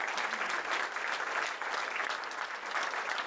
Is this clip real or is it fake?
real